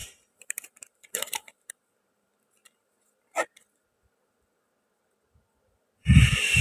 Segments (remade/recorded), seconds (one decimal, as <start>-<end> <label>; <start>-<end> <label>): 0.0-2.5 remade; 2.5-6.6 recorded